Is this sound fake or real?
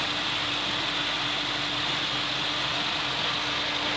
real